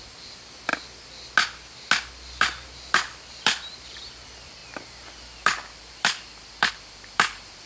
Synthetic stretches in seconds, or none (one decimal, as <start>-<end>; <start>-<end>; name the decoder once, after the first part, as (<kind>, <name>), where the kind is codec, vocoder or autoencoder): 0.0-0.7 (vocoder, BigVGAN v2); 2.1-7.7